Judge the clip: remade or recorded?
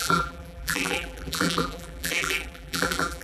remade